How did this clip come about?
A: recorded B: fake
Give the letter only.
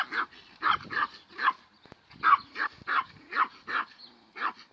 A